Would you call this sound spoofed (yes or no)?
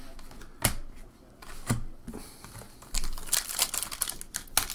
no